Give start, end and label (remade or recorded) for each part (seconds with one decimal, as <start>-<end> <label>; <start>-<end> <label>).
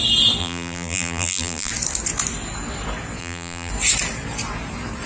0.0-0.4 recorded; 0.4-1.7 remade; 1.7-3.2 recorded; 3.2-3.7 remade; 3.7-5.1 recorded